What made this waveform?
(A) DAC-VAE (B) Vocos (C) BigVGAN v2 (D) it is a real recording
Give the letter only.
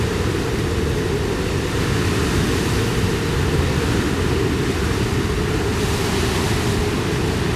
D